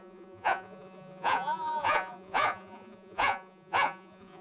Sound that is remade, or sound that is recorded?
remade